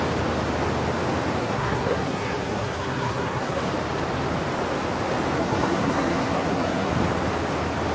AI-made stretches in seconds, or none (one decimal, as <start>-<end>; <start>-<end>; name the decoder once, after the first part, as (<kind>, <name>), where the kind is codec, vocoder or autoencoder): 1.4-3.6 (codec, SNAC); 5.4-6.9

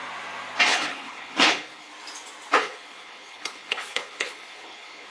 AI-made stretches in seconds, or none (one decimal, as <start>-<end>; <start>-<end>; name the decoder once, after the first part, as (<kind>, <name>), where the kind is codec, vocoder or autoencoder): 0.7-1.9 (codec, HILCodec); 2.6-5.1

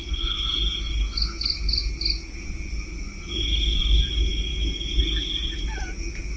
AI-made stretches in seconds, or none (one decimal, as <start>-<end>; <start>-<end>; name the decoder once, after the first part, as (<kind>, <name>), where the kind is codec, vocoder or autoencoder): none

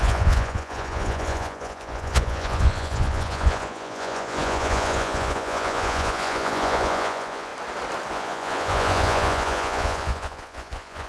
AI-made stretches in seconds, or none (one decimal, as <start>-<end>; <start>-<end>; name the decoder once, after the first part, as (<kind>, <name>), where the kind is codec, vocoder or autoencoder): 0.0-7.5 (vocoder, Vocos); 8.1-11.1

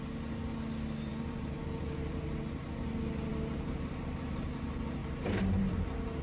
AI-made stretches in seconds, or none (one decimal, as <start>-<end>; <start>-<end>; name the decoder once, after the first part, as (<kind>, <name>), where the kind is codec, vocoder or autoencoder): 1.1-1.6 (vocoder, BigVGAN v2)

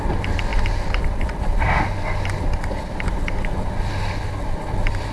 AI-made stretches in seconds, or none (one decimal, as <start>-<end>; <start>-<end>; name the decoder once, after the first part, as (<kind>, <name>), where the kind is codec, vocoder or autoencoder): none

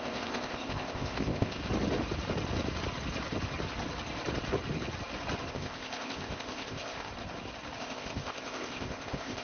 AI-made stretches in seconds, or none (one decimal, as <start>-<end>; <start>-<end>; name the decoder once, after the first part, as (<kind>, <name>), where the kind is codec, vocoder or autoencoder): 0.0-1.6 (codec, ZipCodec); 5.5-7.1; 7.8-9.4